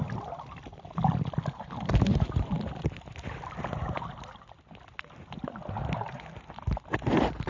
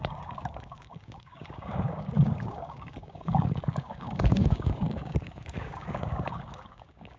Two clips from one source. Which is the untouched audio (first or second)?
first